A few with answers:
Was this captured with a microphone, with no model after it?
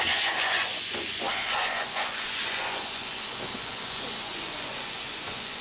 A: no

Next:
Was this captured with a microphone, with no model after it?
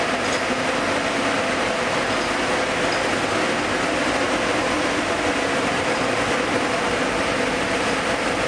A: yes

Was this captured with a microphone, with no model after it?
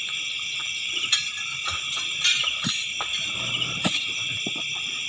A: no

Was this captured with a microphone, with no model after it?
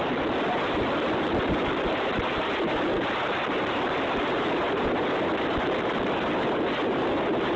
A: yes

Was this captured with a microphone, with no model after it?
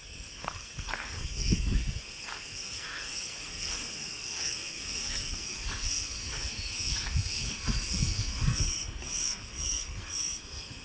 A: no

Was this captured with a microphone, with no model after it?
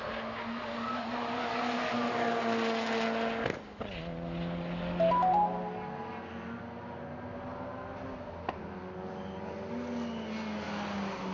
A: yes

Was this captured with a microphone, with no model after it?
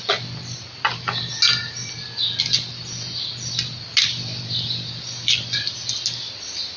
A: yes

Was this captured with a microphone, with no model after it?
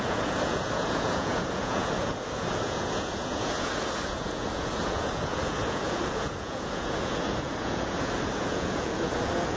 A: no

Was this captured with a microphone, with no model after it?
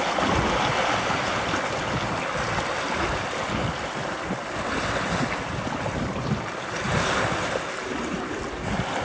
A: yes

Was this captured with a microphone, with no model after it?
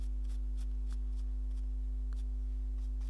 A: yes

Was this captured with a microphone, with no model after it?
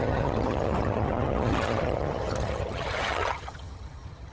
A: no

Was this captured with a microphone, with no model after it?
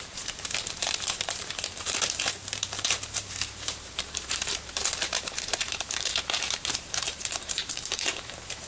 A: no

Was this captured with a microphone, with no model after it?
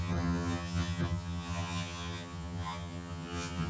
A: no